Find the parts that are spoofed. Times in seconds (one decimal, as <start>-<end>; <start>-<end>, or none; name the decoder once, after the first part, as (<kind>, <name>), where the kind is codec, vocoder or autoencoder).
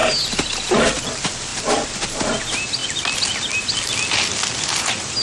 1.5-2.0 (vocoder, BigVGAN v2)